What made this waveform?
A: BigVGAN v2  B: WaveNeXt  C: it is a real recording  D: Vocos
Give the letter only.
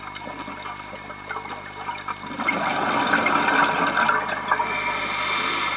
C